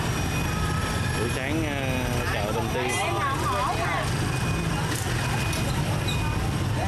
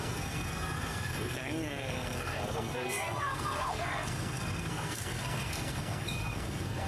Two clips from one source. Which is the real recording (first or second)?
first